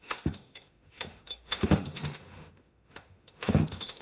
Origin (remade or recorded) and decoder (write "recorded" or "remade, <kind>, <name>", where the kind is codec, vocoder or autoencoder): remade, autoencoder, DAC-VAE